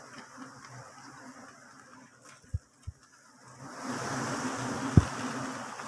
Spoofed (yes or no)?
no